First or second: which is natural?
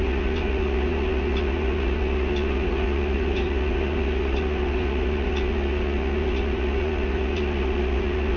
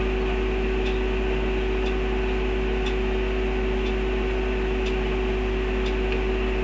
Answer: second